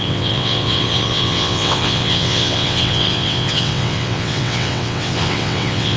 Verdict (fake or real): fake